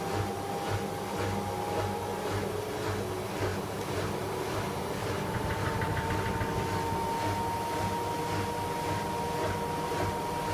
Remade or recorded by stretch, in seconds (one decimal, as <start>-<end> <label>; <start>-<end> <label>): 0.0-3.5 recorded; 3.5-6.1 remade; 6.1-9.4 recorded; 9.4-10.5 remade